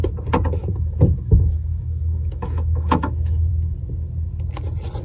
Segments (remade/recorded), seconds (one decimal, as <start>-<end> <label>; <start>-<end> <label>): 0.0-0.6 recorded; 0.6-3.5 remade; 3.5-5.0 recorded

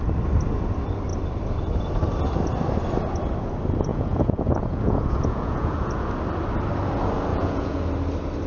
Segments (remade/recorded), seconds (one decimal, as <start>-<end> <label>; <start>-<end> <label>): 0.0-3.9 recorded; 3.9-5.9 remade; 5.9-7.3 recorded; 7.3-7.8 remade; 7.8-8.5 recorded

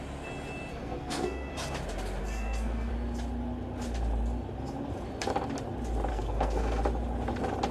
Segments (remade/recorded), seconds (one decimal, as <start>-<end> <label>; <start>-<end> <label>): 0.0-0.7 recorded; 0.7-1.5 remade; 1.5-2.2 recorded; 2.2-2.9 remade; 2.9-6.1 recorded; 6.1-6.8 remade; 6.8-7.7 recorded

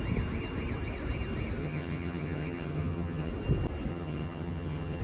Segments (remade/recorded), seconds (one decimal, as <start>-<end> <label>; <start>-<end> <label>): 0.0-1.6 recorded; 1.6-3.3 remade; 3.3-3.9 recorded; 3.9-5.0 remade